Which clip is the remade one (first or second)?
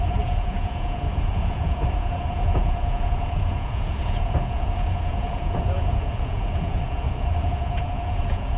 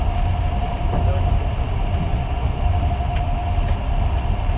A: first